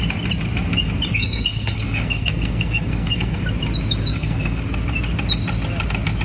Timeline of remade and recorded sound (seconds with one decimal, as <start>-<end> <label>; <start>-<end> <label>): 0.0-1.1 recorded; 1.1-3.4 remade; 3.4-4.1 recorded; 4.1-4.6 remade; 4.6-6.2 recorded